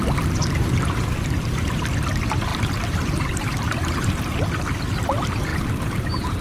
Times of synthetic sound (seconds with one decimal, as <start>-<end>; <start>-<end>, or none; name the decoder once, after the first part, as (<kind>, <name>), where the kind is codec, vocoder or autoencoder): 2.5-4.2 (vocoder, BigVGAN v2); 5.5-6.4